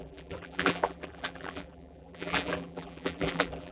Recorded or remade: remade